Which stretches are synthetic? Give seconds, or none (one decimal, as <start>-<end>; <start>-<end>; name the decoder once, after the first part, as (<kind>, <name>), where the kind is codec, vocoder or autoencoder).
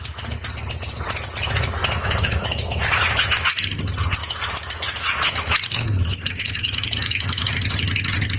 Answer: 1.8-3.6 (autoencoder, DAC-VAE); 4.2-7.5